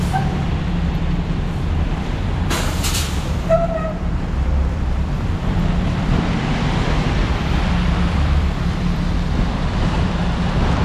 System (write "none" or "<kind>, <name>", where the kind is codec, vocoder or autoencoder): vocoder, BigVGAN v2